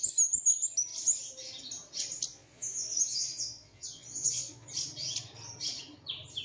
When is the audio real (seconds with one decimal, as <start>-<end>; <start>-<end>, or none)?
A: 0.0-2.3; 4.7-6.4